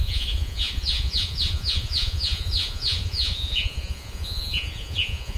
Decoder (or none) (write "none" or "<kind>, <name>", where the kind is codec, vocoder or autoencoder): vocoder, Vocos